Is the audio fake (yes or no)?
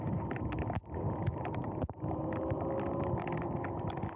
no